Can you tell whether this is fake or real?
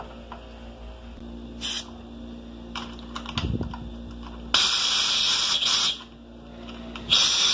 real